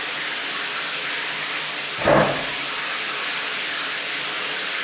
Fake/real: fake